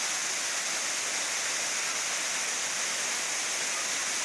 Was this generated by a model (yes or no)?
no